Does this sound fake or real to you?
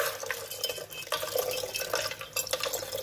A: real